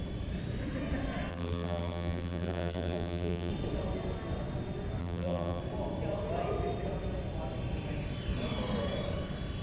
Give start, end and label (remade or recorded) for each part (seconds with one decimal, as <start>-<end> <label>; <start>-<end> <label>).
0.0-1.3 recorded; 1.3-3.5 remade; 3.5-5.0 recorded; 5.0-5.6 remade; 5.6-9.6 recorded